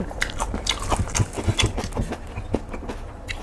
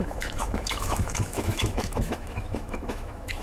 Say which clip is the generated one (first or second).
second